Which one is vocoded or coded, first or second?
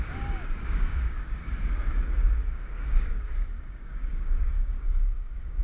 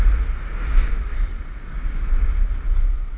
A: first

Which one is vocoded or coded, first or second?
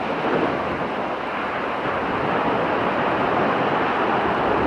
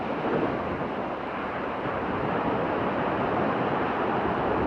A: second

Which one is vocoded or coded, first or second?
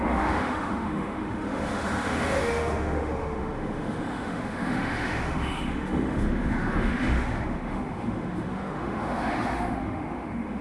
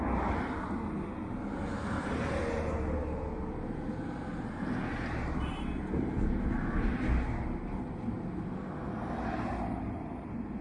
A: first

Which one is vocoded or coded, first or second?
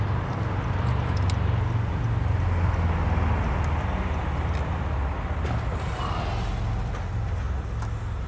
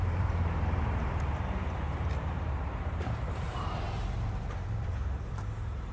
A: second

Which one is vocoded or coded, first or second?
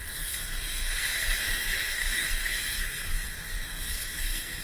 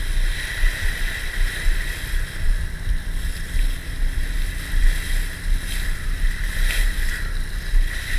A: first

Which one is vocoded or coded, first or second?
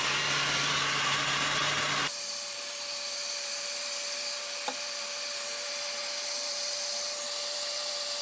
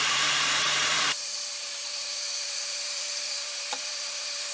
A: second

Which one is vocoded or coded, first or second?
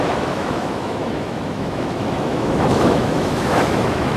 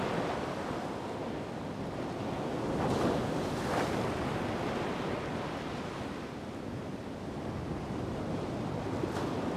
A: first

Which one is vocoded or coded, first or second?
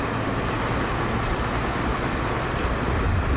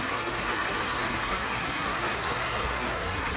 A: second